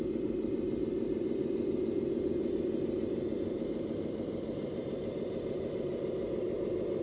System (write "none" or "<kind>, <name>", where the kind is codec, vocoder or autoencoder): vocoder, BigVGAN v2